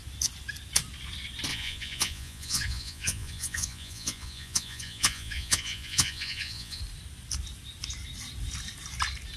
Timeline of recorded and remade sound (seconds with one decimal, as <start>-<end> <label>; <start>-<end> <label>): 0.0-1.5 recorded; 1.5-6.8 remade; 6.8-9.4 recorded